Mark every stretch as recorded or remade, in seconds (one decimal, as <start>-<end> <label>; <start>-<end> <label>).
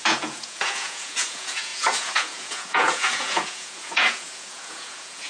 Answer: 0.0-5.3 remade